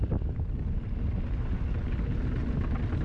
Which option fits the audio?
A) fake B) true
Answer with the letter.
B